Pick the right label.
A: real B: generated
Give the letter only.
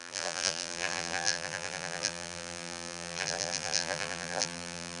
B